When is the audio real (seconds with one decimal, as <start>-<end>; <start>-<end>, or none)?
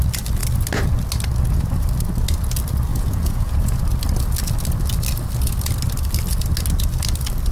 0.0-2.9; 3.8-7.5